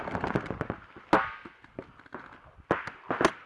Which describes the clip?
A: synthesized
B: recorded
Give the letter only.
B